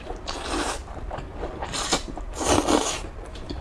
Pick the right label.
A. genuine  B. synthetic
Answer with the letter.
B